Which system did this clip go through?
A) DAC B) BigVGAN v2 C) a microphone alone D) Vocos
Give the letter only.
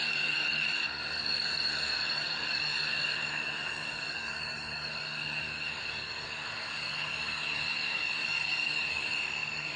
A